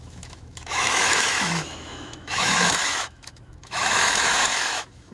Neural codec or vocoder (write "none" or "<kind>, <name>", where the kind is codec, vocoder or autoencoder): autoencoder, DAC-VAE